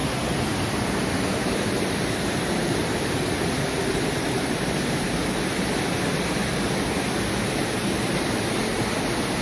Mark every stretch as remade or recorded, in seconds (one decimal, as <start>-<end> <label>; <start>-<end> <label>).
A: 0.0-1.0 recorded; 1.0-5.2 remade; 5.2-8.1 recorded; 8.1-9.4 remade